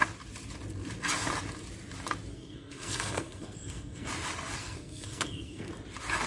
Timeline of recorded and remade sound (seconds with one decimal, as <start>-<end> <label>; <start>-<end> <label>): 0.0-2.3 recorded; 2.3-4.1 remade; 4.1-4.6 recorded; 4.6-5.7 remade; 5.7-6.3 recorded